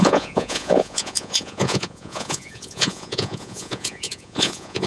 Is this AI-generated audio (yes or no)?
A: yes